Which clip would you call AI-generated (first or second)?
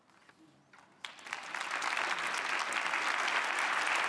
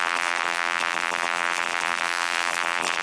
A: second